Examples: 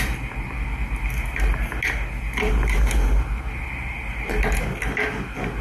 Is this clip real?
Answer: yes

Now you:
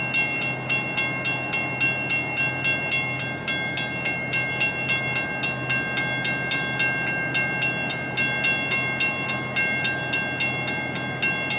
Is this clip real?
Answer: yes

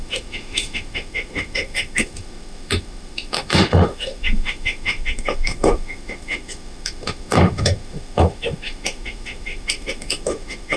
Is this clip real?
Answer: no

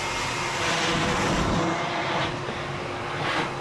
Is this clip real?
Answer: yes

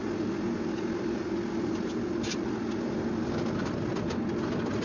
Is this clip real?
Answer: yes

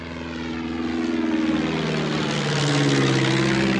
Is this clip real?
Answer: yes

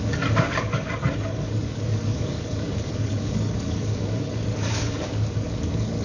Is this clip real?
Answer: no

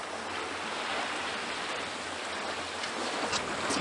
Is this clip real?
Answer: yes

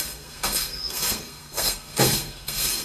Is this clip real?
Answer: no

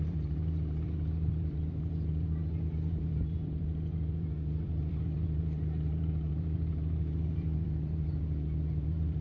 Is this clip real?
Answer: no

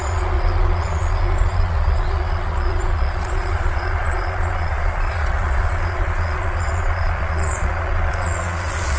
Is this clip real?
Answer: no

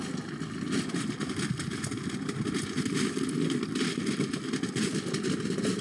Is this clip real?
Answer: yes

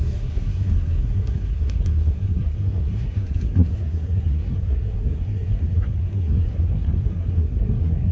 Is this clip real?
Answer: no